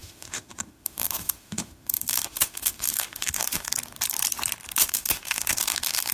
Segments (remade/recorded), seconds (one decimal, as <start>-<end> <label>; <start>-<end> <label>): 0.0-3.7 remade; 3.7-4.8 recorded; 4.8-6.1 remade